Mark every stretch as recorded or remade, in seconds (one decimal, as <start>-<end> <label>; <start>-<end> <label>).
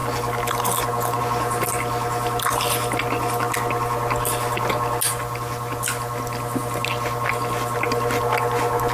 0.0-8.9 recorded